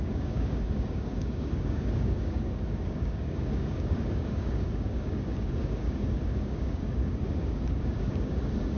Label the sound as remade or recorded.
remade